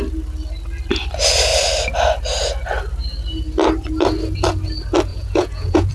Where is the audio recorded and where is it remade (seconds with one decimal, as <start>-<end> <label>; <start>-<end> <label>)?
0.0-5.1 recorded; 5.1-5.9 remade